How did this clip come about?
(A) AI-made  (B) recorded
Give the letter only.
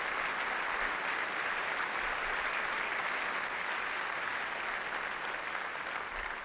B